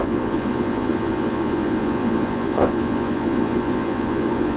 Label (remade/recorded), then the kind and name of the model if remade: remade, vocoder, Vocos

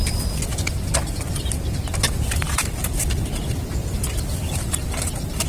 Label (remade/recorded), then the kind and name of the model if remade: recorded